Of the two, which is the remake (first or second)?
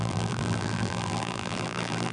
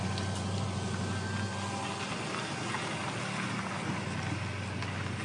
first